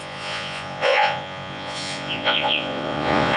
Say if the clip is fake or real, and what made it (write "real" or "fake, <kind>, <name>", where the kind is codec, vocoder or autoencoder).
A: fake, vocoder, Vocos